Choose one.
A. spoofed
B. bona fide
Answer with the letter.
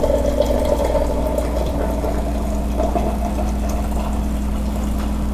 B